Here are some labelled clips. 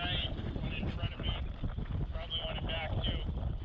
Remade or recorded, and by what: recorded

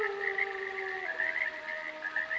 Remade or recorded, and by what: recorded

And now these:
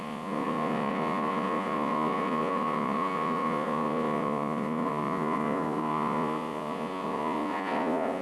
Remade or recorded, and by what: remade, vocoder, Vocos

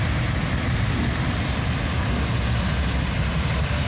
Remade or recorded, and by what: recorded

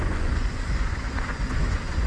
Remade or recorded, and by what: remade, vocoder, Vocos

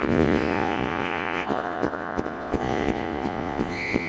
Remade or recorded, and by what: remade, vocoder, Vocos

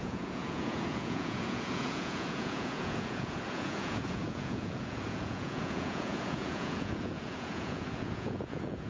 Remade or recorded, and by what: remade, vocoder, Vocos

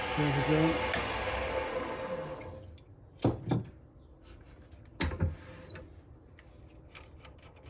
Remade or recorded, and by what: recorded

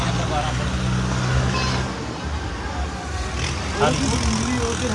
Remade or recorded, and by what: recorded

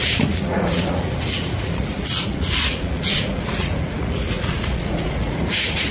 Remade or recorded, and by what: remade, vocoder, Vocos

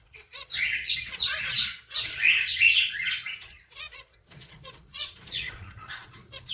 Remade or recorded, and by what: remade, vocoder, Vocos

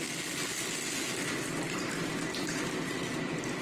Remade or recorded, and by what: recorded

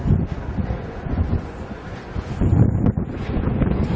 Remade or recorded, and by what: remade, vocoder, Vocos